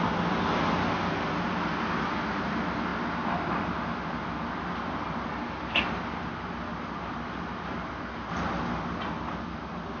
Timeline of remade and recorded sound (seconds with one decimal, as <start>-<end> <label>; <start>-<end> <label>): 0.0-10.0 recorded